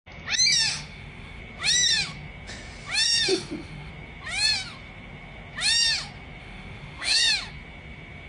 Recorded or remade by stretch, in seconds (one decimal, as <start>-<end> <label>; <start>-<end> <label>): 0.0-0.7 recorded; 0.7-1.4 remade; 1.4-3.3 recorded; 3.3-3.9 remade; 3.9-6.4 recorded; 6.4-7.3 remade; 7.3-8.3 recorded